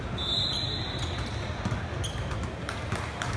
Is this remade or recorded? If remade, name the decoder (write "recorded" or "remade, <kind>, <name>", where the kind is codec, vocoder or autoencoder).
recorded